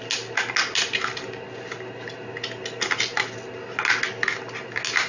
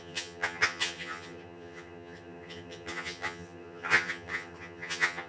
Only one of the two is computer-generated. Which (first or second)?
second